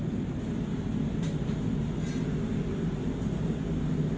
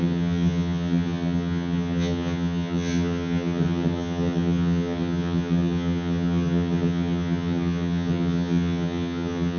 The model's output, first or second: second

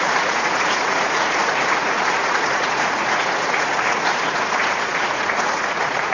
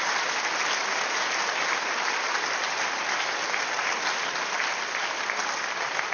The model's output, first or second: first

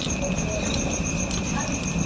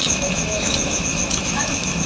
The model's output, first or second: second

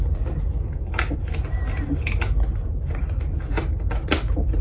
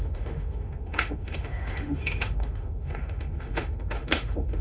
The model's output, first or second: second